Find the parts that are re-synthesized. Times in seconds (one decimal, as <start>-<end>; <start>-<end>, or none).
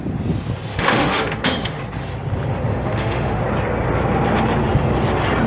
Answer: 0.7-1.8; 2.7-3.4